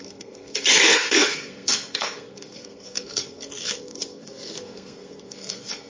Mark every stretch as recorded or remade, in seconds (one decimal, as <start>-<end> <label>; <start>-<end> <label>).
0.0-5.9 remade